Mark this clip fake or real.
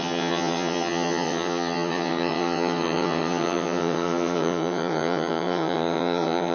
fake